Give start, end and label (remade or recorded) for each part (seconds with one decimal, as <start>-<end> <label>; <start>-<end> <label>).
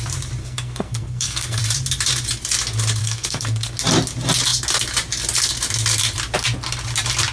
0.0-0.4 recorded; 0.4-1.6 remade; 1.6-3.0 recorded; 3.0-3.7 remade; 3.7-7.3 recorded